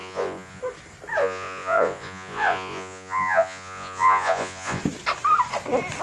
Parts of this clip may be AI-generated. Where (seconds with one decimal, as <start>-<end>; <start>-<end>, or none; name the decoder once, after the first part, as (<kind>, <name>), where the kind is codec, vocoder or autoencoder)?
0.0-0.6 (vocoder, Vocos); 1.2-4.8

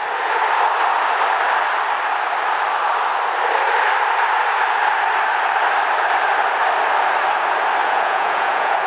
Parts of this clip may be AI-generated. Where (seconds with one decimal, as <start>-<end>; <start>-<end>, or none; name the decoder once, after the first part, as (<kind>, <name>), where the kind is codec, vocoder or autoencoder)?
7.8-8.9 (vocoder, Vocos)

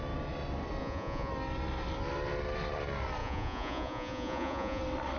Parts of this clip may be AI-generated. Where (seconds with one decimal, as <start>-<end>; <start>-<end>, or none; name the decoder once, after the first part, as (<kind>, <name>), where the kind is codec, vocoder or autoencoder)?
0.8-1.3 (vocoder, Vocos); 3.2-4.8

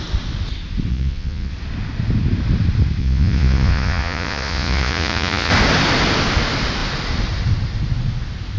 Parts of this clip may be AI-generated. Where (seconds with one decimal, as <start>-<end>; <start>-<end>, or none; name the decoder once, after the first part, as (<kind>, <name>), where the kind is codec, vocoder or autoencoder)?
0.9-1.5 (vocoder, Vocos); 3.0-5.5

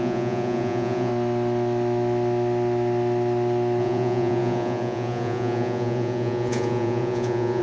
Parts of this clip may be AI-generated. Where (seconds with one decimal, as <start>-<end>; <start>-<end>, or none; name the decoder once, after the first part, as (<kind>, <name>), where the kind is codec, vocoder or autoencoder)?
0.0-1.1 (vocoder, Vocos); 3.8-7.6

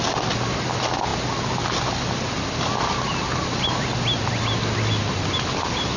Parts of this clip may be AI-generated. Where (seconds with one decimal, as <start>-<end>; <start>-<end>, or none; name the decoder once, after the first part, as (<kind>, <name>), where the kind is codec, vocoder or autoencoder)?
none

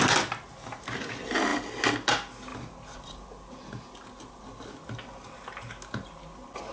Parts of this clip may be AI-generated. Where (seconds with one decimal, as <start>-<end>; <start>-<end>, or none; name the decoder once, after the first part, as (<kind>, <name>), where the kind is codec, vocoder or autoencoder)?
none

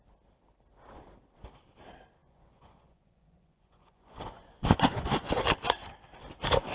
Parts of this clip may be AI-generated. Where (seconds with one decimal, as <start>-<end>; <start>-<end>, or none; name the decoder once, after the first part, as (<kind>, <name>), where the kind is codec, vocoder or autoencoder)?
2.2-5.4 (vocoder, Vocos)